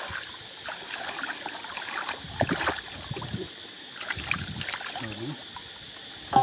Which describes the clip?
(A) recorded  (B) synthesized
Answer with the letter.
A